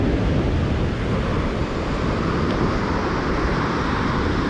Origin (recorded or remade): recorded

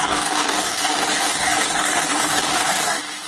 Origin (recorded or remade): remade